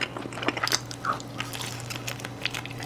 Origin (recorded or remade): recorded